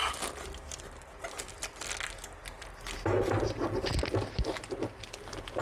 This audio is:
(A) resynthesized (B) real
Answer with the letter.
B